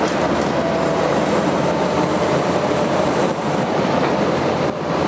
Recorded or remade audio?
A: remade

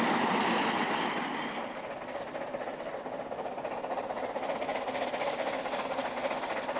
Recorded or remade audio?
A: recorded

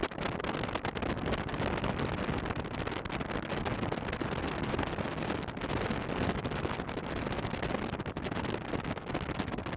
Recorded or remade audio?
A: recorded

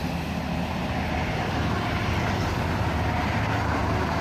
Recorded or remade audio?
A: recorded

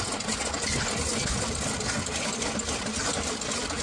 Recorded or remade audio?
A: recorded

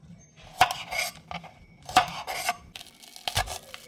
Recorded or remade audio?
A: recorded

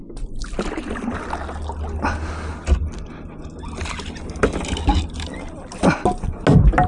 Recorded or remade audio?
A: recorded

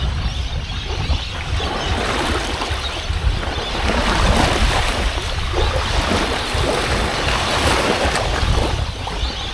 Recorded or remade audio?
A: recorded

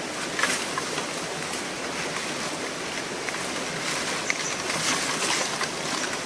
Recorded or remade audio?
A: recorded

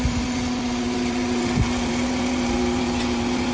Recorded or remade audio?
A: remade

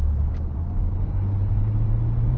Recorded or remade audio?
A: remade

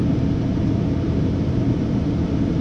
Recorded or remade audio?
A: remade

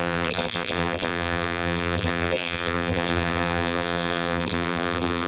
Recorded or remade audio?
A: remade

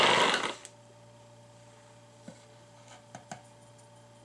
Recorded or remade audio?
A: recorded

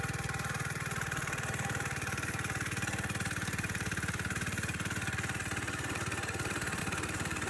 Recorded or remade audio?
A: remade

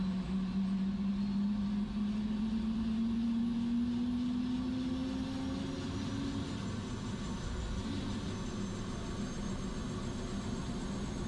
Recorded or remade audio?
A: recorded